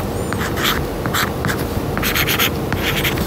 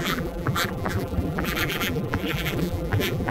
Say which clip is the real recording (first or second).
first